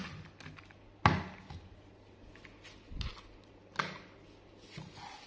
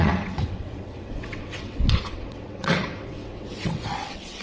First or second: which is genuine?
first